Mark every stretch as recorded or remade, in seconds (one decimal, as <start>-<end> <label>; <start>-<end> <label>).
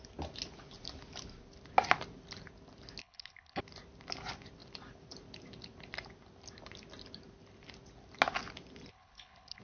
0.0-3.0 recorded; 3.0-3.6 remade; 3.6-8.9 recorded; 8.9-9.6 remade